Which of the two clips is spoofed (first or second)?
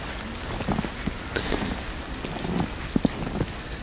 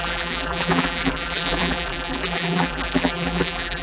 second